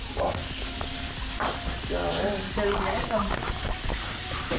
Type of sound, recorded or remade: recorded